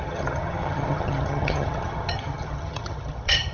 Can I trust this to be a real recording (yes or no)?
no